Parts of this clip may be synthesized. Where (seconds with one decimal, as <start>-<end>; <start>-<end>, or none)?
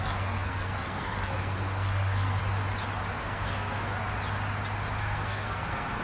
0.0-2.4; 3.2-3.9; 5.0-6.0